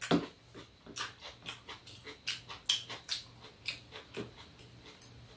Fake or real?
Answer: real